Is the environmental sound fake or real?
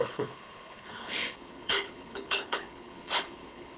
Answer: fake